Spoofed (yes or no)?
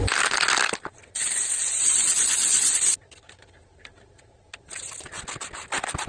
no